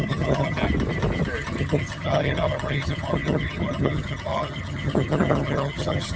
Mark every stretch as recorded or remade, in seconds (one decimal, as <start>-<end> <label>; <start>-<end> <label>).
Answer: 0.0-0.6 remade; 0.6-1.4 recorded; 1.4-6.2 remade